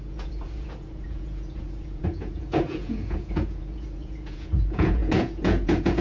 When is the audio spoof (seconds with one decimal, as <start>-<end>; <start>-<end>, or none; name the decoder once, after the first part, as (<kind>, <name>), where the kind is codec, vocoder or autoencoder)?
0.0-6.0 (vocoder, Vocos)